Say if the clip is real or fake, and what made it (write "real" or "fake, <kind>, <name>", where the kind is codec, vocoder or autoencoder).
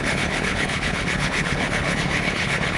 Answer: fake, codec, HILCodec